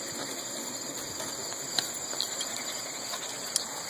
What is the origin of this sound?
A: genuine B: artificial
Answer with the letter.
A